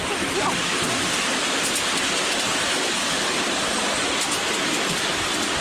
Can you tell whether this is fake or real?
real